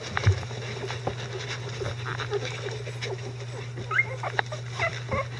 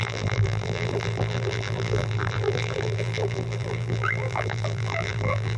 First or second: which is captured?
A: first